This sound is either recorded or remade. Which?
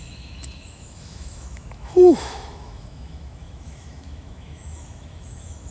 remade